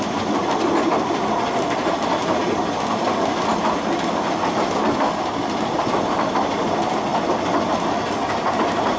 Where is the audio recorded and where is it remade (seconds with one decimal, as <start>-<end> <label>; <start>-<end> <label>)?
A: 0.0-9.0 recorded